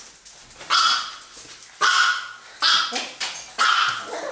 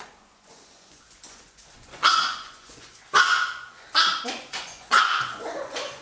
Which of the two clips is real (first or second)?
first